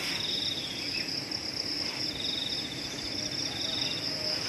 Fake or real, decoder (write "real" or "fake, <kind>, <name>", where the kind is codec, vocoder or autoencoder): real